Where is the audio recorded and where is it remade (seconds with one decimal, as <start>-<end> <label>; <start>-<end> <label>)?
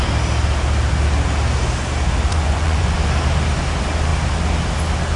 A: 0.0-2.3 recorded; 2.3-3.0 remade; 3.0-5.2 recorded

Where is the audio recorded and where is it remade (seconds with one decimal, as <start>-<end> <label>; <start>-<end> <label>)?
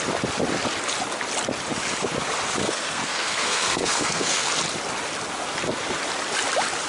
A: 0.0-2.6 recorded; 2.6-4.5 remade; 4.5-6.9 recorded